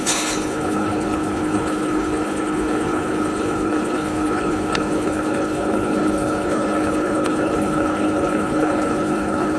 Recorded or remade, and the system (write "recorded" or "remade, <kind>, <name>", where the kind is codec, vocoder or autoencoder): remade, codec, HILCodec